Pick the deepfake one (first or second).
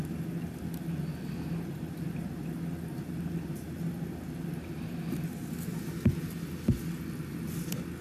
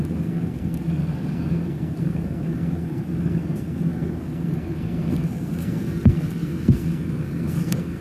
second